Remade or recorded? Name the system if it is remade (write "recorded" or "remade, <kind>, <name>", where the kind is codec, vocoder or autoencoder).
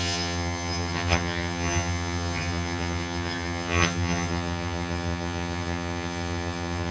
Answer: remade, vocoder, HiFi-GAN